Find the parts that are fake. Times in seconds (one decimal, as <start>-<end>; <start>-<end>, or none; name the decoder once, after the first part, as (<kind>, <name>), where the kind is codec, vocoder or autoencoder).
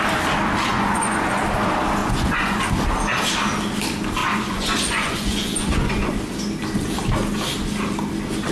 0.7-1.4 (vocoder, Vocos); 2.0-2.6; 4.2-6.1